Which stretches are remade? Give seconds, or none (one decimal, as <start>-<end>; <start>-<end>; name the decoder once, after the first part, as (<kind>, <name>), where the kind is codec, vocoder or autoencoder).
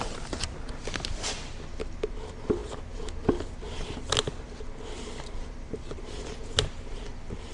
none